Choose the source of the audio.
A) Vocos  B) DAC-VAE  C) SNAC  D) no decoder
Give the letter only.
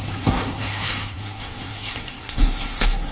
C